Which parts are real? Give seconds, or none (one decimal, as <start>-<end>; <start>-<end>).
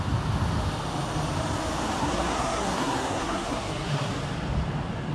0.0-2.0; 4.1-5.1